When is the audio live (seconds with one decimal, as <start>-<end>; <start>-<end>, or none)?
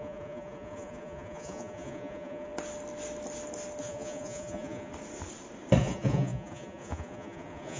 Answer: 2.5-3.8; 4.9-5.8